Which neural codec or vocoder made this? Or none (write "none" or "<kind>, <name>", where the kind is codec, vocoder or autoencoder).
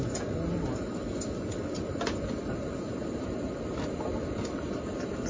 none